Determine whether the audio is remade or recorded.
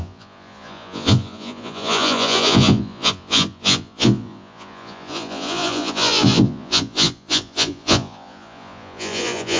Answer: remade